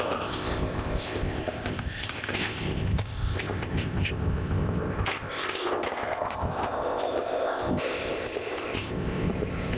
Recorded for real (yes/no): no